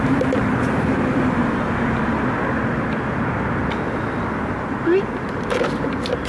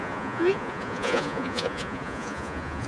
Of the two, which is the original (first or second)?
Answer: first